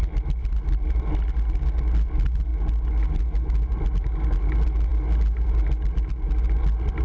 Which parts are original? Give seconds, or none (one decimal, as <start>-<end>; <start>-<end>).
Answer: 0.0-7.0